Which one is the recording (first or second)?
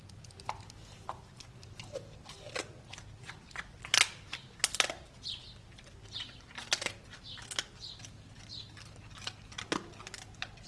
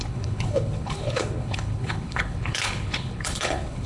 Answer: first